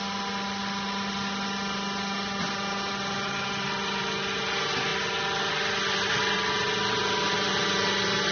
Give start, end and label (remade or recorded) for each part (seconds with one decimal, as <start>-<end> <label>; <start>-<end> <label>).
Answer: 0.0-8.3 recorded

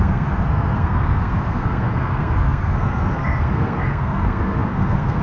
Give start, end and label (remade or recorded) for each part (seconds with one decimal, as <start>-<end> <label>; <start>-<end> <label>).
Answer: 0.0-5.2 remade

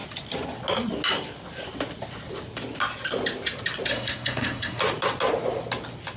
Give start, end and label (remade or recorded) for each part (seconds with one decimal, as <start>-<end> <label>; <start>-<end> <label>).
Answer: 0.0-3.9 recorded; 3.9-4.8 remade; 4.8-6.2 recorded

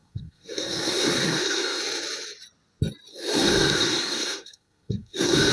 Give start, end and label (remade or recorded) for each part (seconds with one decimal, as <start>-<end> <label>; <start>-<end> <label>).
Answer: 0.0-1.8 remade; 1.8-3.1 recorded; 3.1-5.5 remade

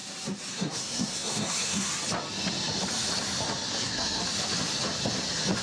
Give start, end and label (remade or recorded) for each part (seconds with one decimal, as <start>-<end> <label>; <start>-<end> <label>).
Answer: 0.0-0.5 recorded; 0.5-1.9 remade; 1.9-3.7 recorded; 3.7-4.2 remade; 4.2-5.6 recorded